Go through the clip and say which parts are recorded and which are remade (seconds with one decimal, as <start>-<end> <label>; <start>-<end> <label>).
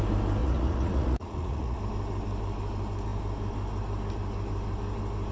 0.0-0.4 recorded; 0.4-1.8 remade; 1.8-5.3 recorded